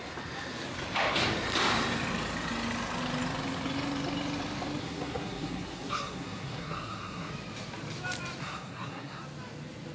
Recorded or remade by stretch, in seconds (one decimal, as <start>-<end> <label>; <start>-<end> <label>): 0.0-4.8 recorded; 4.8-7.3 remade; 7.3-8.4 recorded; 8.4-9.2 remade; 9.2-9.9 recorded